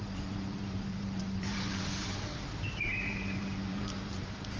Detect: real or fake fake